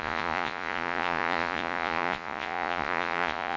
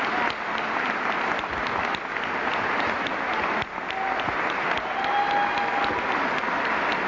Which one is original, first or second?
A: second